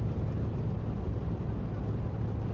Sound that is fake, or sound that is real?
real